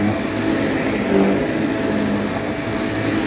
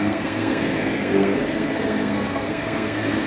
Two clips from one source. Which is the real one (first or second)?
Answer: first